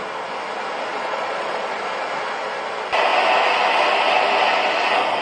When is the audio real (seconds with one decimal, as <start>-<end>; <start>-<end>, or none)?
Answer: 0.0-0.9; 1.8-5.2